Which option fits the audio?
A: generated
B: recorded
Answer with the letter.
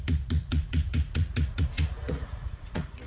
A